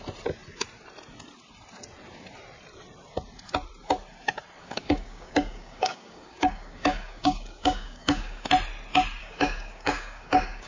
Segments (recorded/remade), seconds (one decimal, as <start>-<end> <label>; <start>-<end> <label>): 0.0-4.6 recorded; 4.6-8.5 remade; 8.5-9.2 recorded; 9.2-10.7 remade